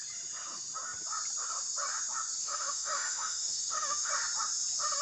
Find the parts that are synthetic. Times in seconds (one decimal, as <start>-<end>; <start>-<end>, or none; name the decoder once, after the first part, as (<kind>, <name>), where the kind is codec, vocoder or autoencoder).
2.4-4.1 (autoencoder, DAC-VAE)